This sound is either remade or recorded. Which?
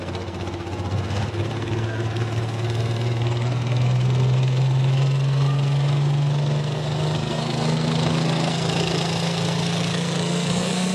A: remade